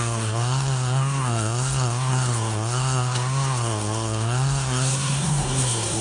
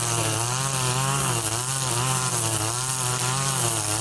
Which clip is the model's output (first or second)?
first